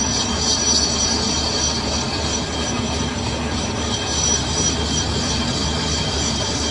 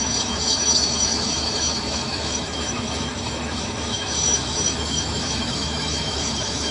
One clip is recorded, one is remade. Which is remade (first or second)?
second